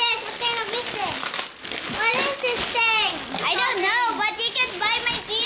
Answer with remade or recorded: recorded